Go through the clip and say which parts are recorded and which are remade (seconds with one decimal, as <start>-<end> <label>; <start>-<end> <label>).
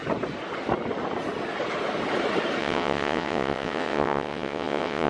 0.0-2.6 recorded; 2.6-5.1 remade